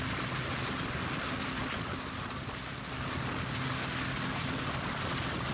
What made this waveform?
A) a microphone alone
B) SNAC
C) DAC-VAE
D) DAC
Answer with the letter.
A